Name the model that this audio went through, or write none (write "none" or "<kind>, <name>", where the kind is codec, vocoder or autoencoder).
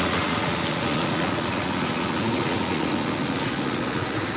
vocoder, Vocos